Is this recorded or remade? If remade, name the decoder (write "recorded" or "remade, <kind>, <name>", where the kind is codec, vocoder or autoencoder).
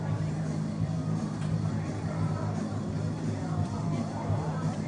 remade, vocoder, BigVGAN v2